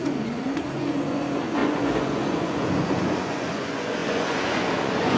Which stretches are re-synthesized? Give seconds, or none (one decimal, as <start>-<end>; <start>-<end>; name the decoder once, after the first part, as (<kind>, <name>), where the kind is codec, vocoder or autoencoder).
0.0-5.2 (vocoder, Vocos)